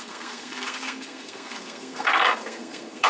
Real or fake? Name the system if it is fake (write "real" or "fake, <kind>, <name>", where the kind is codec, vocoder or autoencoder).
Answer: fake, codec, SNAC